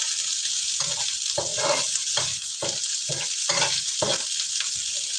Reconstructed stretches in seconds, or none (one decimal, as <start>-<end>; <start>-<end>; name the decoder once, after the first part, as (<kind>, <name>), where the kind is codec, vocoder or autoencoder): none